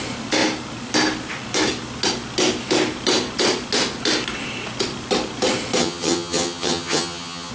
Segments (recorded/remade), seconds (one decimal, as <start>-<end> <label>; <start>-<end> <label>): 0.0-5.8 recorded; 5.8-7.5 remade